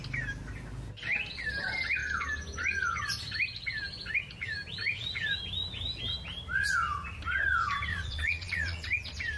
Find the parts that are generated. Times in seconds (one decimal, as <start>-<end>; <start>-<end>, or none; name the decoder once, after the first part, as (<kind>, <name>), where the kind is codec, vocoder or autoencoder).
7.9-8.8 (vocoder, Vocos)